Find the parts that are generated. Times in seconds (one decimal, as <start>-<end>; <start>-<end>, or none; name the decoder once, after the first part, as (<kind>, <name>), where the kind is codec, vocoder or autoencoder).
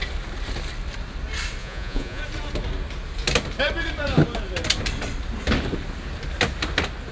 1.6-2.2 (vocoder, Vocos)